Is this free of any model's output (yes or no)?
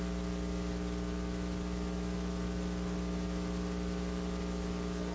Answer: yes